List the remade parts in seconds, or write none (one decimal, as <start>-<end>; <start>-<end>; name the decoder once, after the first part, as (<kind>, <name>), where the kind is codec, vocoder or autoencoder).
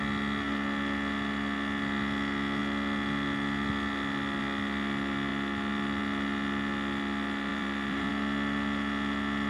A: 7.5-8.1 (vocoder, BigVGAN v2)